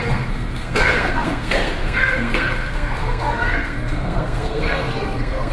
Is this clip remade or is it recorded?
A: remade